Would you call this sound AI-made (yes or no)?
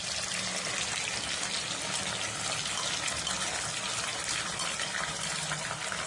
no